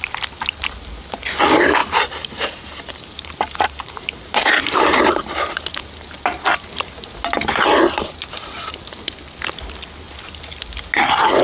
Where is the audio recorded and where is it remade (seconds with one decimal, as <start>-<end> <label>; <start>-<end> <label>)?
0.0-1.8 recorded; 1.8-4.5 remade; 4.5-11.4 recorded